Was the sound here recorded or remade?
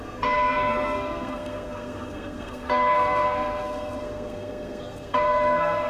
remade